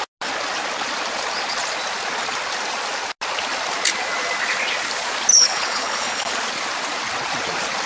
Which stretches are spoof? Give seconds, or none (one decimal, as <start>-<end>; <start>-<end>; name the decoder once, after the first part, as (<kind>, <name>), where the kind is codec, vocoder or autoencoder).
5.3-6.3 (codec, HILCodec)